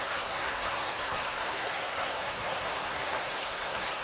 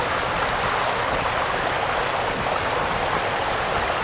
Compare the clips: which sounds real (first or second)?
second